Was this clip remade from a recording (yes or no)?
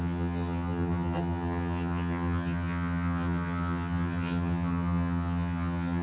yes